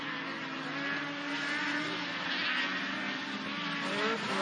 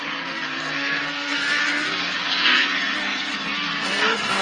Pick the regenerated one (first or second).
second